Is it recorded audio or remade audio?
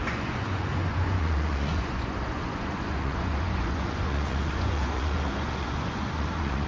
remade